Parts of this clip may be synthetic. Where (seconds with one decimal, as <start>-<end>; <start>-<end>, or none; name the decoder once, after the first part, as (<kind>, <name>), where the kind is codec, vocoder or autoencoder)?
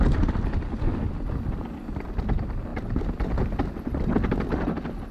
none